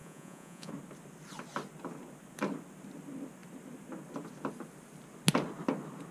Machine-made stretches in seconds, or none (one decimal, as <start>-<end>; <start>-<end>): 0.0-0.7